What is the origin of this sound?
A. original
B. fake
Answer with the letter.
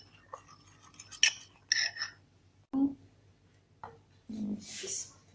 A